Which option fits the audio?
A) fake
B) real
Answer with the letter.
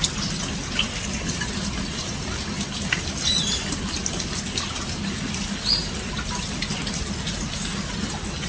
B